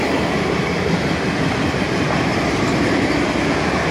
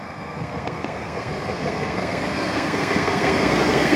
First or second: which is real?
first